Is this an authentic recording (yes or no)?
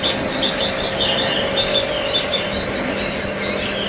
yes